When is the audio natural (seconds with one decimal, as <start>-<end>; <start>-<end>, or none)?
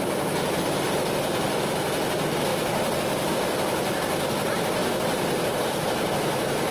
0.0-2.5; 3.3-4.8; 6.1-6.7